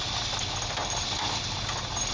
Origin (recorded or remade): recorded